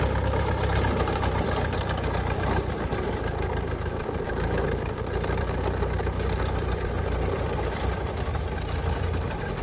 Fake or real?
fake